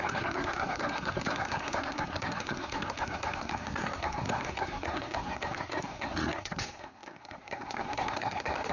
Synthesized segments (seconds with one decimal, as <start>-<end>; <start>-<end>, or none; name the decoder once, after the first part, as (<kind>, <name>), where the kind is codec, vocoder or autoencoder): 0.0-8.7 (codec, SNAC)